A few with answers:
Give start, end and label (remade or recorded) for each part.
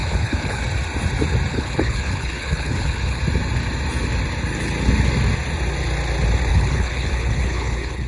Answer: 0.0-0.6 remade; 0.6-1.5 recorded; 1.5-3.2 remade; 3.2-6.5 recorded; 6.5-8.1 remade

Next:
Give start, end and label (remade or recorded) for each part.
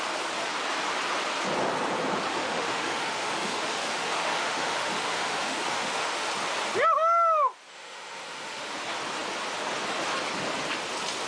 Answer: 0.0-2.3 recorded; 2.3-6.3 remade; 6.3-7.7 recorded; 7.7-8.7 remade; 8.7-11.3 recorded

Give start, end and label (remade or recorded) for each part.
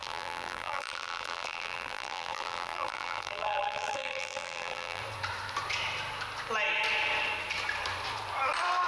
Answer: 0.0-5.0 remade; 5.0-8.9 recorded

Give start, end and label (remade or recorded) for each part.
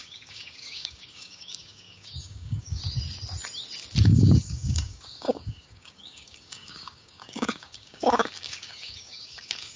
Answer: 0.0-2.8 remade; 2.8-4.0 recorded; 4.0-9.8 remade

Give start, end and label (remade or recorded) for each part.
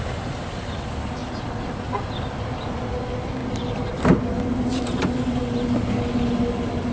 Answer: 0.0-6.9 recorded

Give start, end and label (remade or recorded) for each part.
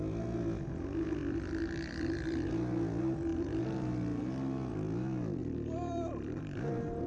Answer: 0.0-1.2 recorded; 1.2-2.5 remade; 2.5-3.3 recorded; 3.3-4.2 remade; 4.2-5.4 recorded; 5.4-6.4 remade; 6.4-7.1 recorded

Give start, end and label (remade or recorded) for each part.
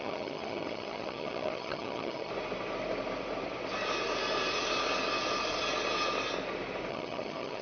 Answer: 0.0-2.3 remade; 2.3-6.9 recorded; 6.9-7.6 remade